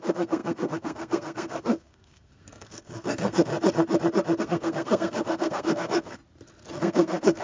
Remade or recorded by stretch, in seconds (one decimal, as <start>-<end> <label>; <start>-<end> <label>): 0.0-3.5 remade; 3.5-4.4 recorded; 4.4-6.2 remade; 6.2-6.8 recorded; 6.8-7.4 remade